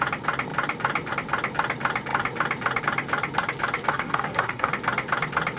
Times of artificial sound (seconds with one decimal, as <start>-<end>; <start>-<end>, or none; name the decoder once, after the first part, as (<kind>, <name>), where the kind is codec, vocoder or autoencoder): 3.9-4.7 (codec, SNAC)